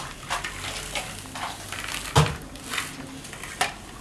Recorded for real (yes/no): yes